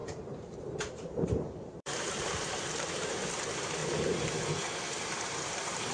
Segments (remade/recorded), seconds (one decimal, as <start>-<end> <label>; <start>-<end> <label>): 0.0-3.8 remade; 3.8-5.3 recorded; 5.3-5.9 remade